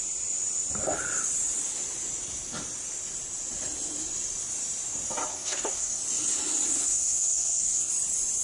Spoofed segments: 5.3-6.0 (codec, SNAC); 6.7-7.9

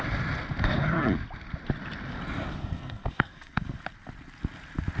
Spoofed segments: 2.6-3.8 (codec, SNAC)